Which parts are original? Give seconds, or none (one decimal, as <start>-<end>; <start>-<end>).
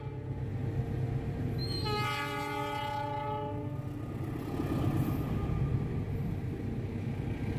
0.0-7.6